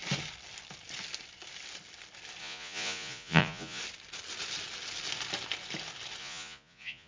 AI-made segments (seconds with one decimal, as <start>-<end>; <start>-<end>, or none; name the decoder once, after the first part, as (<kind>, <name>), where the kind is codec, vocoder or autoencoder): 2.4-3.8 (vocoder, Vocos); 6.2-7.1